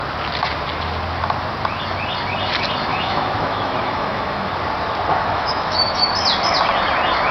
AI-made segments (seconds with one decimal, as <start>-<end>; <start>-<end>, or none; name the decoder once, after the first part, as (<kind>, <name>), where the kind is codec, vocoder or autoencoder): 2.9-4.5 (autoencoder, DAC-VAE); 5.1-6.1